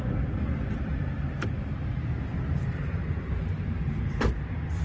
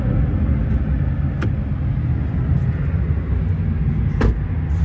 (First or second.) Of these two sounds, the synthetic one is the first